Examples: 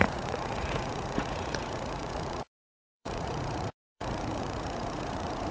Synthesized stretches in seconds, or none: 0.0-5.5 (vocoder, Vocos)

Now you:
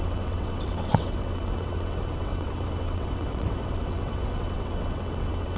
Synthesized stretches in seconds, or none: 0.0-5.6 (vocoder, WaveNeXt)

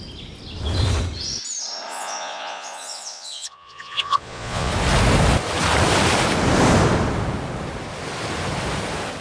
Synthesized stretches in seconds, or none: 1.9-4.7 (vocoder, Vocos)

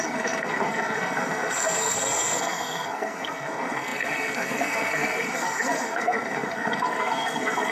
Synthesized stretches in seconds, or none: 0.0-7.7 (codec, SNAC)

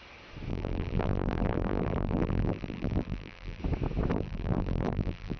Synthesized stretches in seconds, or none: 0.5-3.6 (vocoder, BigVGAN v2); 4.1-5.4

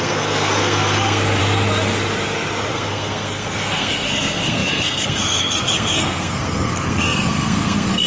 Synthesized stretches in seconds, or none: 0.0-1.4 (codec, SNAC); 2.7-8.1

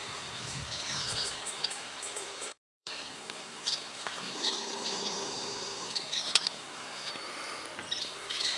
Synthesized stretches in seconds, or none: 0.0-7.1 (codec, SNAC); 8.0-8.6

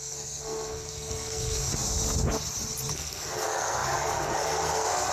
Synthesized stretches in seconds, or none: 0.0-1.7 (codec, SNAC); 2.9-5.1